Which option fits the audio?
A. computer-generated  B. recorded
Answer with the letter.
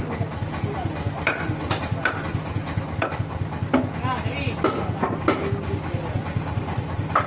B